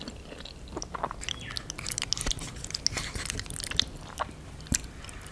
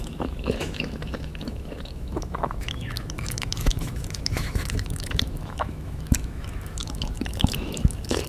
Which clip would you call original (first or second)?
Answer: first